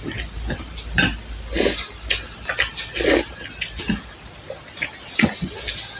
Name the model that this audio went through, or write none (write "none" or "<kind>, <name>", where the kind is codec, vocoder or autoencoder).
none